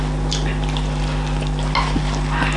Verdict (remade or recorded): recorded